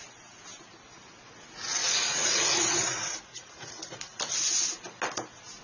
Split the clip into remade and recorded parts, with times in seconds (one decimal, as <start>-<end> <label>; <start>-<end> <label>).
0.0-1.8 recorded; 1.8-4.2 remade; 4.2-5.6 recorded